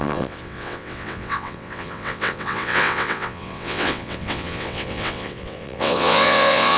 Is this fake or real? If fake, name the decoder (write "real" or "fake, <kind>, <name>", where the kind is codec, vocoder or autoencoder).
fake, vocoder, WaveNeXt